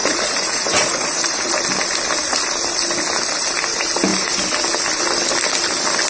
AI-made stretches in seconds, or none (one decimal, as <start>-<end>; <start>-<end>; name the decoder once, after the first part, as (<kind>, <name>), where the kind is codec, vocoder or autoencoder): 0.0-1.5 (vocoder, Vocos)